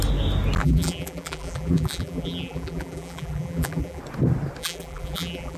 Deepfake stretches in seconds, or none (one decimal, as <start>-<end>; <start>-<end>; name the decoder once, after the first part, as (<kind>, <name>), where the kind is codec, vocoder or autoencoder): 0.6-4.0 (vocoder, BigVGAN v2); 4.6-5.6